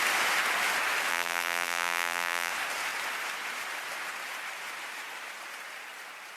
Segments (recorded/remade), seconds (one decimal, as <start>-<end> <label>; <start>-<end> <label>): 0.0-1.1 recorded; 1.1-2.5 remade; 2.5-6.4 recorded